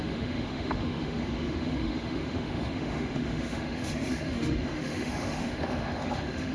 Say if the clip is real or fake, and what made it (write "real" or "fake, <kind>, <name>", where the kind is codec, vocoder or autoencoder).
fake, autoencoder, DAC-VAE